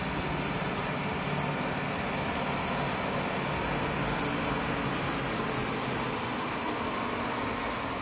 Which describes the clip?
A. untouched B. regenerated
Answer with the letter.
A